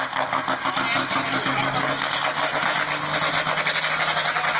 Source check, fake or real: real